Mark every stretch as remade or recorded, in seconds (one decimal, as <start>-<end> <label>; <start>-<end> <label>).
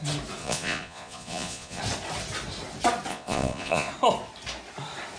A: 0.0-0.4 recorded; 0.4-1.8 remade; 1.8-3.1 recorded; 3.1-3.9 remade; 3.9-5.2 recorded